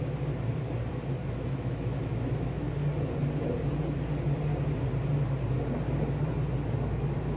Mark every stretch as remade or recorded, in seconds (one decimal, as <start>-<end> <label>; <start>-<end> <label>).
0.0-1.2 recorded; 1.2-2.7 remade; 2.7-7.4 recorded